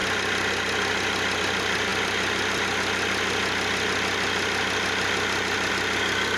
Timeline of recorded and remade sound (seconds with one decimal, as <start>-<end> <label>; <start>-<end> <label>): 0.0-6.4 recorded